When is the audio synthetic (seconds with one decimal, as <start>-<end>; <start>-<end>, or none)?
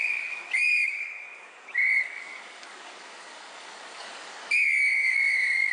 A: 0.0-5.7